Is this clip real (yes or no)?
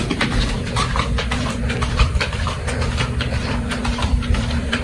no